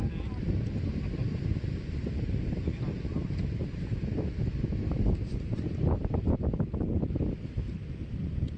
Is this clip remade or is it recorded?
recorded